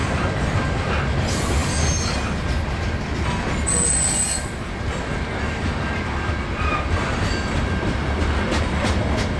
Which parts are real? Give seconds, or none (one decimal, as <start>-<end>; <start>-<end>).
0.0-9.4